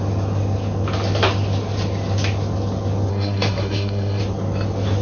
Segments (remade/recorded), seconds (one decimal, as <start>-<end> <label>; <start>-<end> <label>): 0.0-3.1 recorded; 3.1-4.2 remade; 4.2-5.0 recorded